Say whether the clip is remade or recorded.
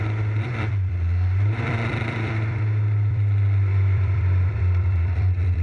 remade